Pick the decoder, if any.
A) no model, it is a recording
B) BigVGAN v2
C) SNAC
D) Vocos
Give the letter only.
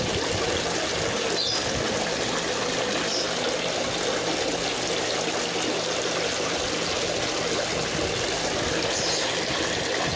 A